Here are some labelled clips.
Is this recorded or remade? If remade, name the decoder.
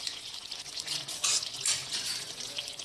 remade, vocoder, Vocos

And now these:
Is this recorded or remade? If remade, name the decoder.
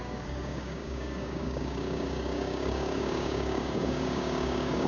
remade, codec, DAC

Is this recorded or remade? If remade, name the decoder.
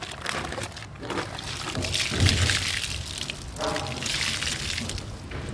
recorded